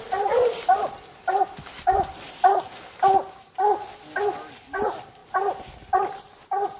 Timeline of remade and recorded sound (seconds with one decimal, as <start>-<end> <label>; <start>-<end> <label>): 0.0-6.8 recorded